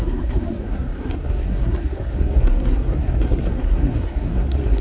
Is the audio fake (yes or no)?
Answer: yes